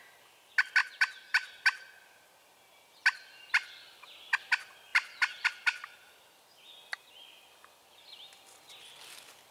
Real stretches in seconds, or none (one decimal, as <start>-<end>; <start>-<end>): 0.0-0.8; 1.5-4.9; 5.5-9.5